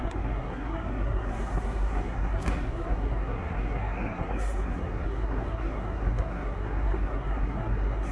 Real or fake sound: fake